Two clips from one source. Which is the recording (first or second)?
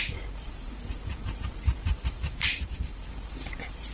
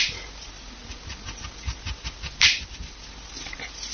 second